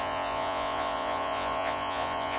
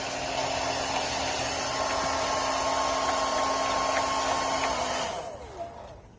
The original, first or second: second